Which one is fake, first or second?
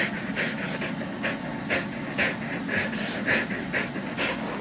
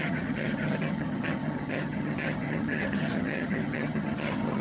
second